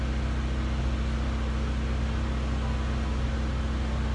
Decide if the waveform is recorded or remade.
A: recorded